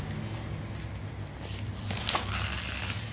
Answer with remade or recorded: recorded